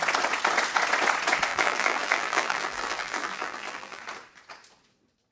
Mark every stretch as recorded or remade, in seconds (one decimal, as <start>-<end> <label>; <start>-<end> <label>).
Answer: 0.0-1.5 recorded; 1.5-4.0 remade; 4.0-5.3 recorded